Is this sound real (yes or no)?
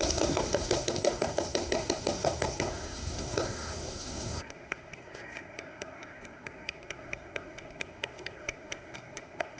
no